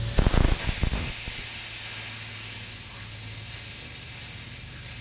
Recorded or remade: recorded